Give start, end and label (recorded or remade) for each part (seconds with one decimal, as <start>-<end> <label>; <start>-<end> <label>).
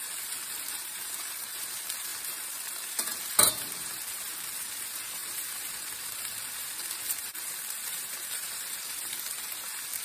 0.0-10.0 remade